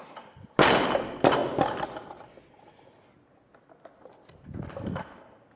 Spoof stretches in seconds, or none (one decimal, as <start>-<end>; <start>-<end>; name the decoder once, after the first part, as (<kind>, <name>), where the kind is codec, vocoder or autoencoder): none